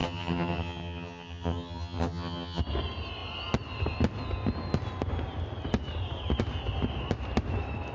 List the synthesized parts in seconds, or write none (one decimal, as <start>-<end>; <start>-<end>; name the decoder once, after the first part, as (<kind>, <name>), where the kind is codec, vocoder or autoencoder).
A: 0.0-2.6 (vocoder, HiFi-GAN)